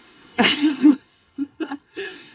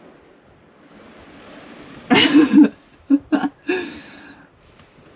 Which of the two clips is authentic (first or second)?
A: second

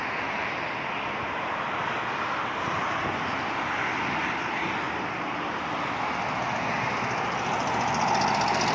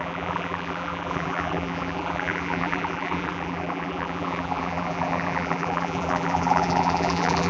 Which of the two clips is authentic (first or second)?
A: first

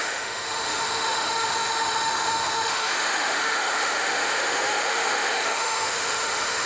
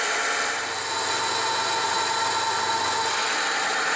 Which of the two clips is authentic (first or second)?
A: second